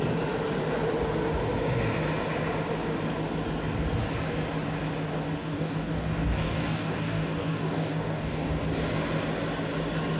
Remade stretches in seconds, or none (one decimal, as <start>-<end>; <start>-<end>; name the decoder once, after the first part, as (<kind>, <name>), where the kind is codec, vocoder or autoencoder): 5.4-8.5 (codec, DAC)